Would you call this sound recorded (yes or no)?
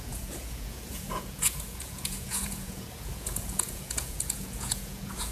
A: no